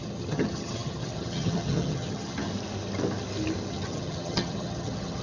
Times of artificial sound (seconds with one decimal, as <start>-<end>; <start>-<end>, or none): 0.0-2.5; 3.7-5.2